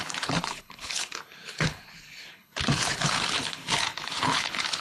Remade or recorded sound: remade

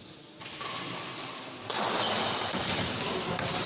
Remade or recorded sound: recorded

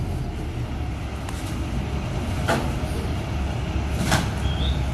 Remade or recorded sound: recorded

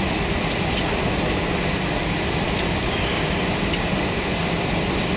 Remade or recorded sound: recorded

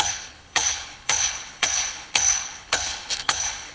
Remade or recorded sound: remade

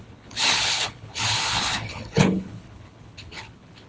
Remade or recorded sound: remade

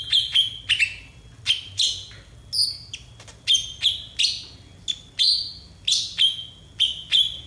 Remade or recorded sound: recorded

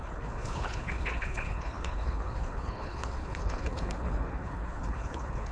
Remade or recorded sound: remade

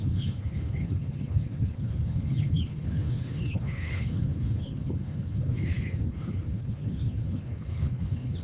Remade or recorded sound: remade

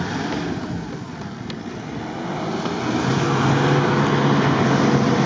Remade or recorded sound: recorded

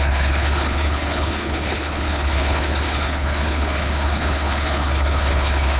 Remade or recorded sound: remade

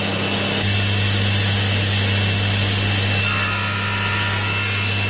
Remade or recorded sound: recorded